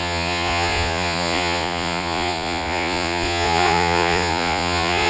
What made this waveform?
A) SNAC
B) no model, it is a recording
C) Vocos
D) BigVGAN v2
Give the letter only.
C